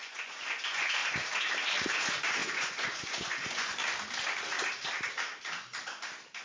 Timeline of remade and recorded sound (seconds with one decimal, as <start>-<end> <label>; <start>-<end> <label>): 0.0-1.0 remade; 1.0-1.9 recorded; 1.9-3.8 remade; 3.8-6.4 recorded